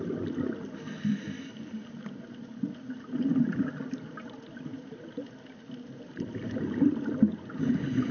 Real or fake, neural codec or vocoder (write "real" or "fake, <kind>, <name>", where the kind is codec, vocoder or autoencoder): real